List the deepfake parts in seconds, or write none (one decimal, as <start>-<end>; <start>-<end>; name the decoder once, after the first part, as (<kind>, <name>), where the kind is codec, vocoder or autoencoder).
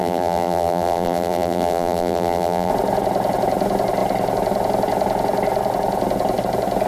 0.0-2.7 (vocoder, BigVGAN v2)